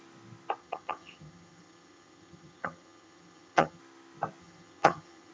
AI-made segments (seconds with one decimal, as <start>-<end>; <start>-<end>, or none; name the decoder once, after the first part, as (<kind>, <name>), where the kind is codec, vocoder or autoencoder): 0.6-3.8 (vocoder, HiFi-GAN); 4.4-5.3